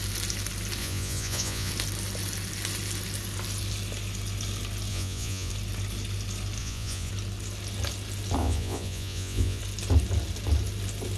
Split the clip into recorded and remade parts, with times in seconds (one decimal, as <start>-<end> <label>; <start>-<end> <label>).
0.0-0.8 recorded; 0.8-1.7 remade; 1.7-4.9 recorded; 4.9-5.5 remade; 5.5-6.6 recorded; 6.6-7.1 remade; 7.1-8.4 recorded; 8.4-9.6 remade; 9.6-11.2 recorded

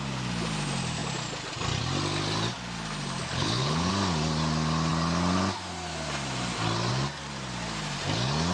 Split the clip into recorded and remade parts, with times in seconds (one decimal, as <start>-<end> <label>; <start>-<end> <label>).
0.0-3.2 recorded; 3.2-3.9 remade; 3.9-8.5 recorded

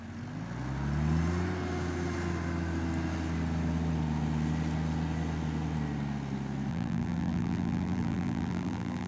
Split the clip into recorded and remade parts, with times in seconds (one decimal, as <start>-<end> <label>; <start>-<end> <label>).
0.0-6.7 recorded; 6.7-9.1 remade

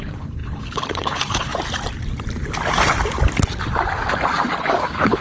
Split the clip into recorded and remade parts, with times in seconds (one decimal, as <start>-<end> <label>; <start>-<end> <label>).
0.0-1.5 remade; 1.5-4.6 recorded; 4.6-5.2 remade